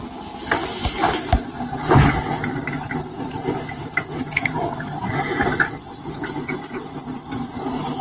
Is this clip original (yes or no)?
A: no